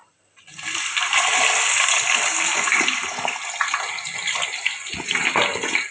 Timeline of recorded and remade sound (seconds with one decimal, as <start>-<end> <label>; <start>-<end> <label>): 0.0-5.9 recorded